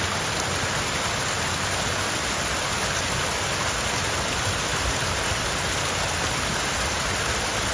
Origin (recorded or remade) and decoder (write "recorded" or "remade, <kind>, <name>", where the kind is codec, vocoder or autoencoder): recorded